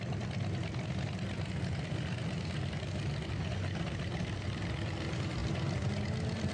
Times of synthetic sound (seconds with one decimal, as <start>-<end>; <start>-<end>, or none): none